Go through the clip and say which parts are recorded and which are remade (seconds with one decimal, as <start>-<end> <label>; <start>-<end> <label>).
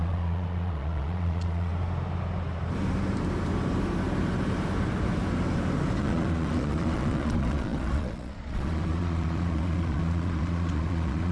0.0-1.7 remade; 1.7-6.0 recorded; 6.0-11.3 remade